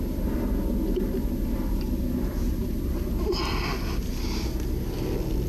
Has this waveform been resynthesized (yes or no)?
no